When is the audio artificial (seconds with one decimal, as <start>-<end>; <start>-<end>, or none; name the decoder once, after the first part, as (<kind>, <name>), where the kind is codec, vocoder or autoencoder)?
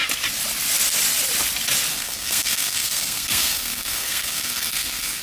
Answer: 1.9-5.2 (codec, SNAC)